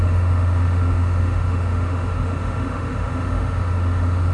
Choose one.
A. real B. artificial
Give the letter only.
B